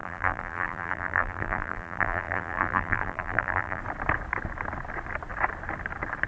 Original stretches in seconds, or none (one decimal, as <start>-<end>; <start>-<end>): 3.8-6.3